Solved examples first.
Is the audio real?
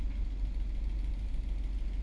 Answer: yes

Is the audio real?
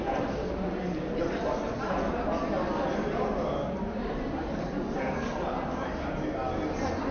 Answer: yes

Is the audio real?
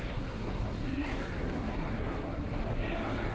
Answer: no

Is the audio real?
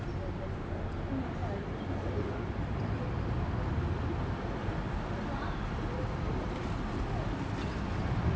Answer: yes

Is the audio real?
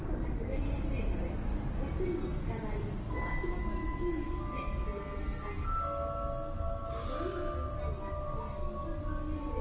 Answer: yes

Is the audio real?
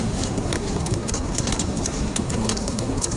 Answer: no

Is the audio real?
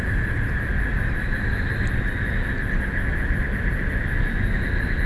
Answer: yes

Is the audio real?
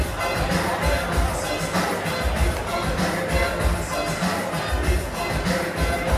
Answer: yes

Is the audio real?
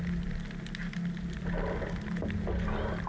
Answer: yes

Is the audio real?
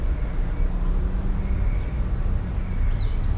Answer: yes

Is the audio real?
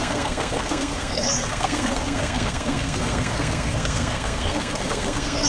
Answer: no